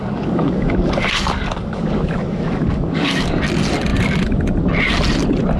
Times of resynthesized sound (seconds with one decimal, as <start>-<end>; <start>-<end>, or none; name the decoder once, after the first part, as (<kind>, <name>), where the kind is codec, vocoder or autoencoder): 0.0-3.4 (codec, DAC)